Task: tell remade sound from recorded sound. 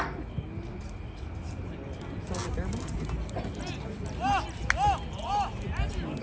recorded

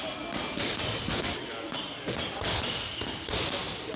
recorded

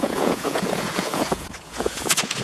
remade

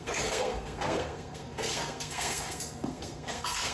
remade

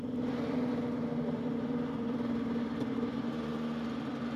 recorded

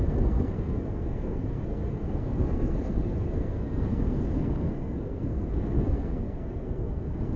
remade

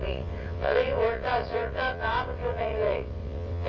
remade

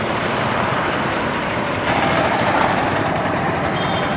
remade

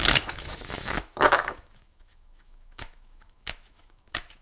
remade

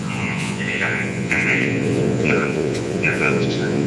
remade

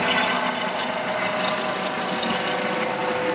recorded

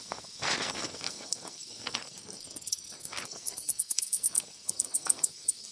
remade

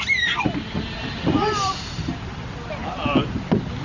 recorded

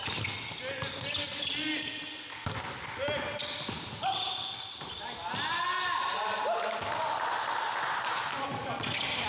recorded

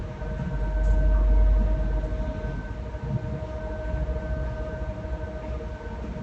recorded